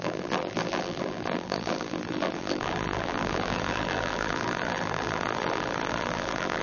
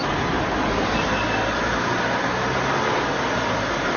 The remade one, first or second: first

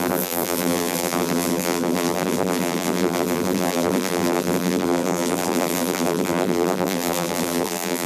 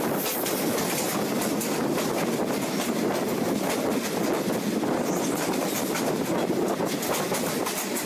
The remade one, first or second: first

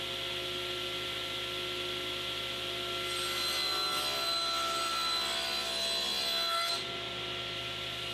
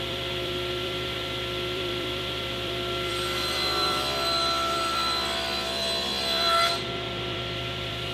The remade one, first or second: second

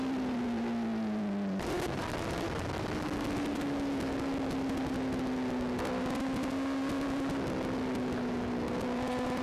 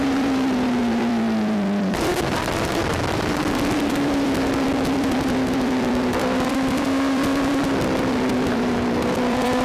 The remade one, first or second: second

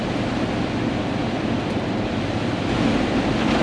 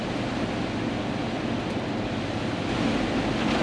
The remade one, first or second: first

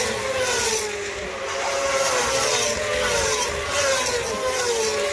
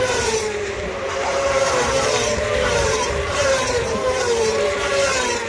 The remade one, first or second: second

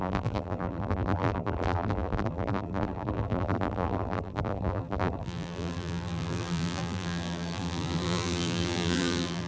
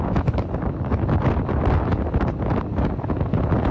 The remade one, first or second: first